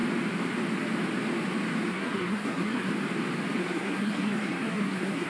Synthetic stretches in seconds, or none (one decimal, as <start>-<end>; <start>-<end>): 1.9-2.9; 3.6-5.3